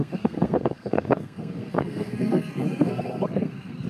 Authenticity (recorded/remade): remade